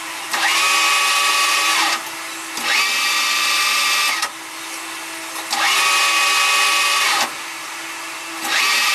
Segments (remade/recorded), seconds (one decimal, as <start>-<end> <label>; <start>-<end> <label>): 0.0-0.5 remade; 0.5-1.1 recorded; 1.1-2.0 remade; 2.0-6.8 recorded; 6.8-8.9 remade